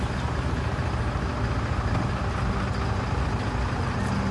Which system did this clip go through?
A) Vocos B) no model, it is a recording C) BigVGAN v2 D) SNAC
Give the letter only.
B